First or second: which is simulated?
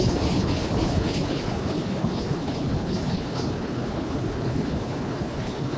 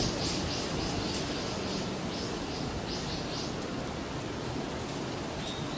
first